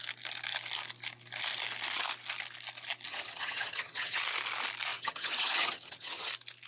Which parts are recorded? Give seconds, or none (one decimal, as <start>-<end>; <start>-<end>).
0.0-3.1; 4.2-4.9; 6.3-6.7